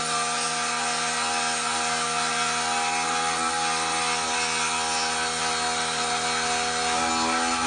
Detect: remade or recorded recorded